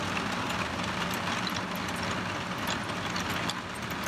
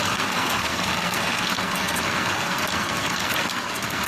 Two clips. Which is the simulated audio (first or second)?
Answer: second